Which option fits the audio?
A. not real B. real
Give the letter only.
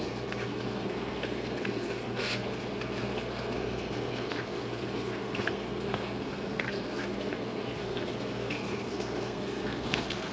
A